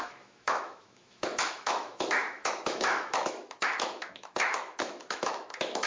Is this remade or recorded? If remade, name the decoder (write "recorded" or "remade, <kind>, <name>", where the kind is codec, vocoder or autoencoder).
remade, autoencoder, DAC-VAE